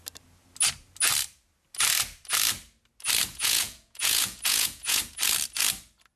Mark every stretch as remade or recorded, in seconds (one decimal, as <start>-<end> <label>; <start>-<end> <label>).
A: 0.0-3.3 recorded; 3.3-5.0 remade; 5.0-6.2 recorded